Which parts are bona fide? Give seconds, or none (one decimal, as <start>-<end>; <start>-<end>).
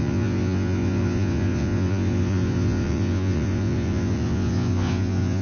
none